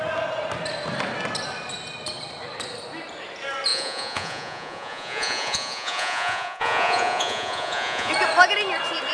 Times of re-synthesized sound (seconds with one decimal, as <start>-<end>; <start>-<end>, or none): 3.7-8.1